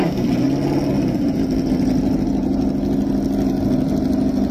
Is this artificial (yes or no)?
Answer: no